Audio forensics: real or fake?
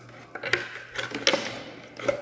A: real